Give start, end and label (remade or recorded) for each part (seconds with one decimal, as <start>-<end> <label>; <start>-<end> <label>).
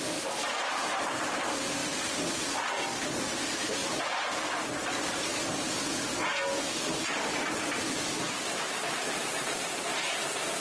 0.0-5.3 remade; 5.3-7.1 recorded; 7.1-10.6 remade